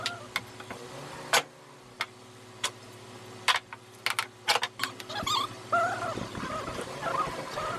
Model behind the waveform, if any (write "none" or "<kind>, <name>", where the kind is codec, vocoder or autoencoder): none